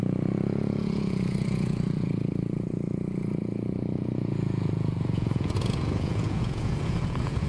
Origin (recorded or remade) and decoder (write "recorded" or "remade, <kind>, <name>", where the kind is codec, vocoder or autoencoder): remade, vocoder, Vocos